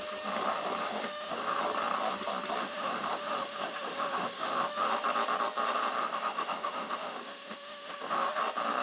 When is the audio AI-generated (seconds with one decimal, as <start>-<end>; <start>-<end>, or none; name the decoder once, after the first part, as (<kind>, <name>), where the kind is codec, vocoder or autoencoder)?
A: 0.8-1.6 (autoencoder, DAC-VAE); 2.6-4.9; 6.0-8.4